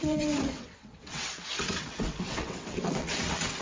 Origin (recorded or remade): remade